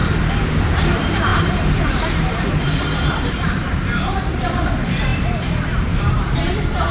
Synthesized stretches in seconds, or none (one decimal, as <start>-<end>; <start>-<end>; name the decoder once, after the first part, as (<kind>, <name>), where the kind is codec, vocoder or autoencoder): 0.8-6.9 (vocoder, BigVGAN v2)